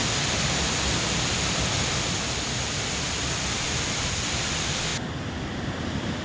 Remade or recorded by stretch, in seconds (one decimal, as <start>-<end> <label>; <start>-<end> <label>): 0.0-4.9 remade; 4.9-5.8 recorded; 5.8-6.2 remade